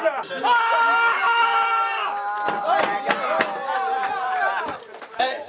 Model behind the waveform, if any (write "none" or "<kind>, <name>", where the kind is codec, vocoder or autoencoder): none